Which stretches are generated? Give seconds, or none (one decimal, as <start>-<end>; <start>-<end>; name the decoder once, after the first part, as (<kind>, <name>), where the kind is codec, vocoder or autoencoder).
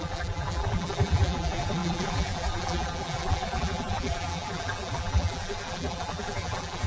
0.0-6.9 (vocoder, BigVGAN v2)